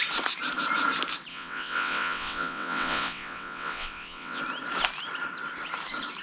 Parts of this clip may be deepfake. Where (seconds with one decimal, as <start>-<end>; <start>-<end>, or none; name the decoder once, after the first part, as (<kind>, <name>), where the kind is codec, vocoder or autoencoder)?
1.3-4.4 (vocoder, WaveNeXt)